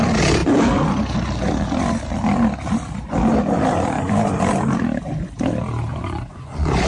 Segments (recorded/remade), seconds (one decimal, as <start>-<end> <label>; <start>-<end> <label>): 0.0-5.9 recorded; 5.9-6.9 remade